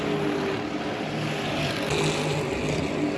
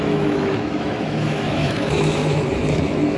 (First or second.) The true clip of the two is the first